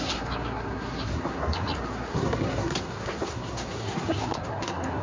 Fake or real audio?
fake